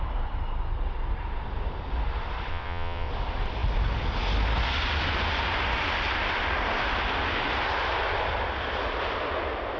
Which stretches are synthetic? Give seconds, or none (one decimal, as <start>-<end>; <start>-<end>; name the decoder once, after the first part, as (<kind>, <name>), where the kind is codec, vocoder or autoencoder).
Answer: 2.5-3.1 (vocoder, WaveNeXt)